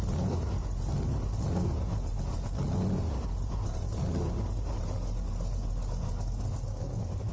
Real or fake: real